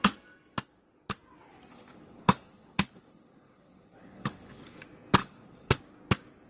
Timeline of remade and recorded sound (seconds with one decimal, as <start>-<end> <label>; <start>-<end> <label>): 0.0-1.7 recorded; 1.7-4.8 remade; 4.8-5.2 recorded; 5.2-5.8 remade; 5.8-6.5 recorded